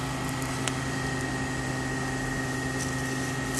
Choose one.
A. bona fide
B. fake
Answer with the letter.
A